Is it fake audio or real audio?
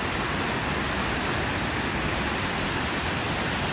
real